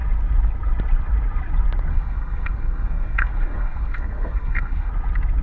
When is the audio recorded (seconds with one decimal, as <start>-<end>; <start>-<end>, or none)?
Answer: 0.0-1.9; 4.9-5.4